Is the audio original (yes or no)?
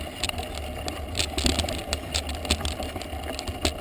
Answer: yes